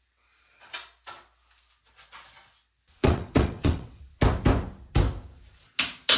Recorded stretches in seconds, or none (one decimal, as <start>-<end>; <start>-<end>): 0.0-3.0; 4.0-6.2

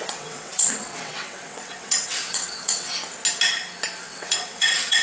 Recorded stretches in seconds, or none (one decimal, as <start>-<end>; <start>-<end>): 2.9-4.0

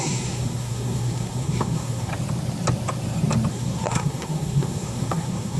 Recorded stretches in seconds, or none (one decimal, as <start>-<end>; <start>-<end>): 2.1-3.5

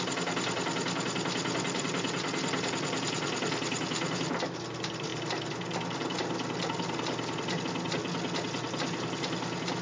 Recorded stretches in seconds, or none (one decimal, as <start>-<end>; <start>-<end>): 0.0-9.8

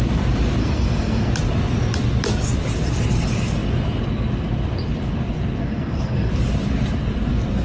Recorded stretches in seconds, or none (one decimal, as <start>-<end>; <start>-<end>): 0.0-0.6; 1.3-5.6; 6.3-7.6

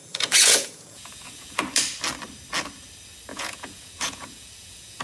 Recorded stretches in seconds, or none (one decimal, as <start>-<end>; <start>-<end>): 1.6-3.3

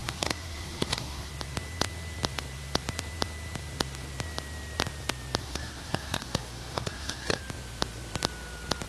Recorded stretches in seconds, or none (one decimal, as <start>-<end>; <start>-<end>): 1.3-5.4; 7.4-8.9